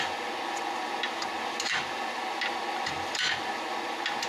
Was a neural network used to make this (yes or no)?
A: no